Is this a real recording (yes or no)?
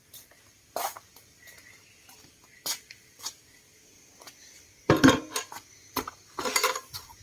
yes